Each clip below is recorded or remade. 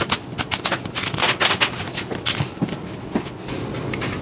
recorded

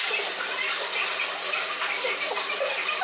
recorded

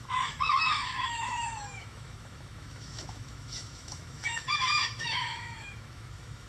remade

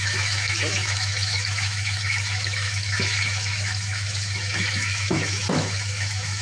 remade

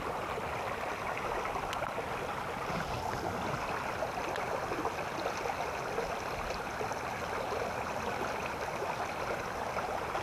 recorded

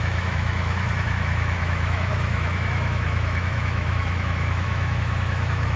remade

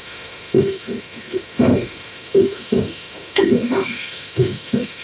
remade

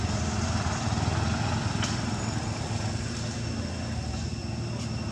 recorded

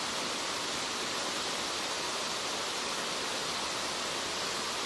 recorded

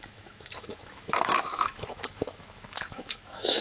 remade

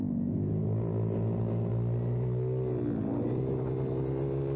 recorded